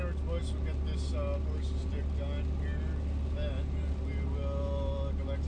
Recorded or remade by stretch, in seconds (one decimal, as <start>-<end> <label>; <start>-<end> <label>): 0.0-5.5 recorded